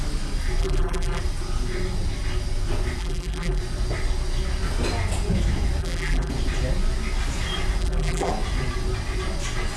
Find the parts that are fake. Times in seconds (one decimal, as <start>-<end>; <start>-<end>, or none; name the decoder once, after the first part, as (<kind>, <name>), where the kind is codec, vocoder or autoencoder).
0.6-1.2 (vocoder, BigVGAN v2); 3.0-3.6; 5.8-6.3; 7.8-8.3